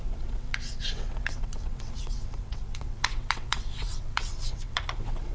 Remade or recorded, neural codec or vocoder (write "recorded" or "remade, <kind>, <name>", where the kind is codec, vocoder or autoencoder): remade, vocoder, WaveNeXt